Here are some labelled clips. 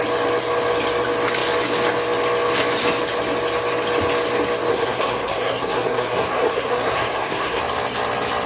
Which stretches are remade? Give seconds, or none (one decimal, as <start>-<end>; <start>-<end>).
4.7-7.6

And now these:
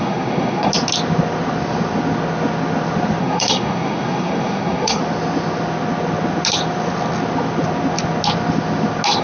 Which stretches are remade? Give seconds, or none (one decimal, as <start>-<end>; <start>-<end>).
0.0-0.7; 3.2-5.0

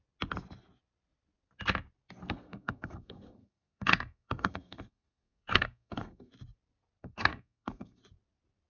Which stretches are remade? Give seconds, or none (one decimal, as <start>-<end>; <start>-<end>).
2.2-6.3; 7.0-8.0